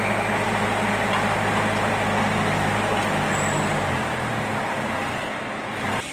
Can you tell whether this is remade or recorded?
recorded